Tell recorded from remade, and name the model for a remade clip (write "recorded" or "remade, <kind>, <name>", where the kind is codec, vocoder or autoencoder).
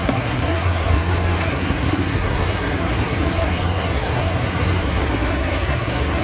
remade, codec, SNAC